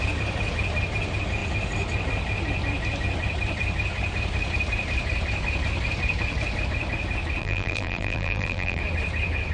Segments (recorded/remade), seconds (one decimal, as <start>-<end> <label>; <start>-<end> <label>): 0.0-7.4 recorded; 7.4-8.8 remade; 8.8-9.5 recorded